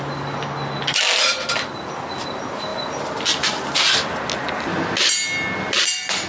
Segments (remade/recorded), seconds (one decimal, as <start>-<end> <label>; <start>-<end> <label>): 0.0-6.3 recorded